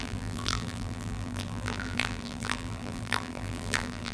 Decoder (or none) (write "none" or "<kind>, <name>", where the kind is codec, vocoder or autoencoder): vocoder, BigVGAN v2